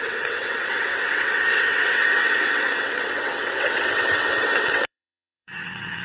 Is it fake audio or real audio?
fake